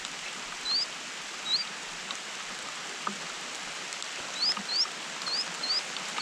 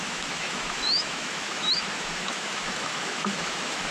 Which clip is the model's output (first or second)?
second